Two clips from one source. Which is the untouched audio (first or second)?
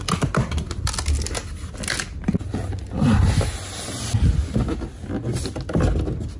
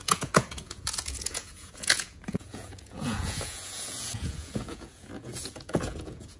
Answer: first